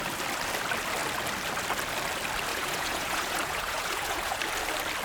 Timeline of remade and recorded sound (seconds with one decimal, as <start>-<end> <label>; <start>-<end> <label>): 0.0-2.5 recorded; 2.5-4.4 remade; 4.4-5.0 recorded